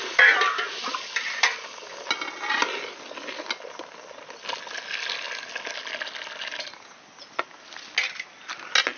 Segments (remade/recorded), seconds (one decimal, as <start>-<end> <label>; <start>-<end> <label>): 0.0-9.0 recorded